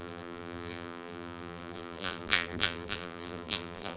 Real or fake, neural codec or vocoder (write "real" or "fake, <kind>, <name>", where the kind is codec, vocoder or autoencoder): fake, vocoder, BigVGAN v2